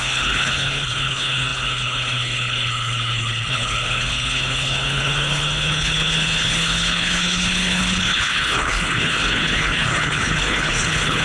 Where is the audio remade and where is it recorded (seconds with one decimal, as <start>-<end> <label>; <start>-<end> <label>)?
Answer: 0.0-11.2 remade